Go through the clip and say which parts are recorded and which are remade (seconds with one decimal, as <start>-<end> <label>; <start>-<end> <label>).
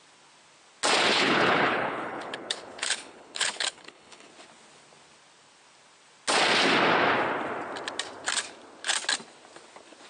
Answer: 0.0-1.1 recorded; 1.1-4.3 remade; 4.3-10.1 recorded